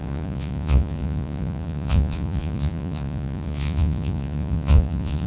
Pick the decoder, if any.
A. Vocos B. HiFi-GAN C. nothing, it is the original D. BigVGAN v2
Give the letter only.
A